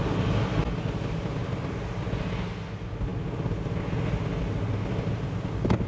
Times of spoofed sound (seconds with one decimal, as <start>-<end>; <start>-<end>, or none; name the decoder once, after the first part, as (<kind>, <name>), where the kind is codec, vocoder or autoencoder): none